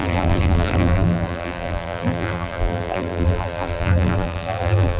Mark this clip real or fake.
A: fake